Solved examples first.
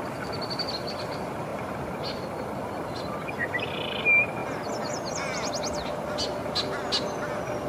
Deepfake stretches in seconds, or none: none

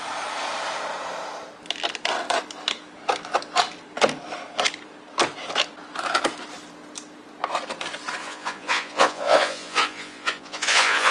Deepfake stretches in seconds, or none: 8.2-11.1 (vocoder, Vocos)

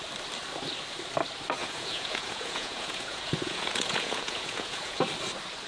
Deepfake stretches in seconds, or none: 1.6-5.0 (vocoder, Vocos)